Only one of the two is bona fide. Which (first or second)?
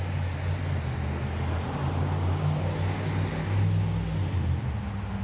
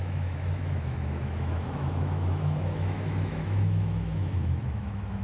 first